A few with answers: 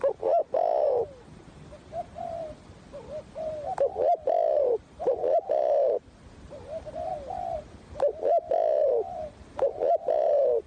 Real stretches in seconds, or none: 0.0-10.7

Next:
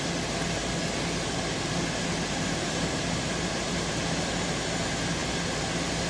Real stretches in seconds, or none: 0.0-0.6; 4.3-6.1

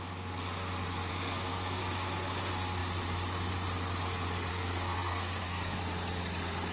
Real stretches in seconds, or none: 0.0-1.1; 1.8-4.5; 5.8-6.7

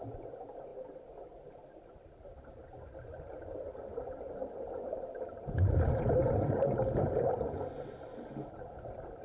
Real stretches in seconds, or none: none

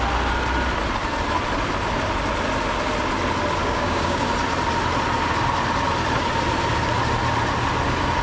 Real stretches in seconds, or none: 0.0-3.6; 4.3-8.2

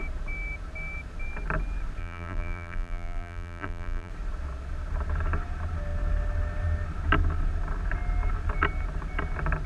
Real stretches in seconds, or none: 0.0-2.0; 4.1-9.7